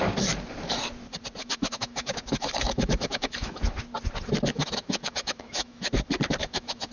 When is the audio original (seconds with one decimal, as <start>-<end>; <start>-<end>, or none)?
0.0-1.4; 3.6-4.5; 5.9-6.4